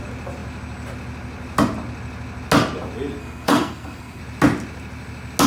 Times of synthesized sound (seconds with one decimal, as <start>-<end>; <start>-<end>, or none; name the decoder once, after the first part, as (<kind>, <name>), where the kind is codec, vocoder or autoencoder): 3.2-4.2 (codec, SNAC)